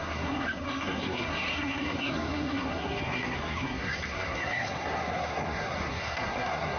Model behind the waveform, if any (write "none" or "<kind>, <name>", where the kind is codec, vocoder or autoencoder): codec, SNAC